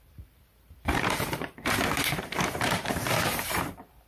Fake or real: fake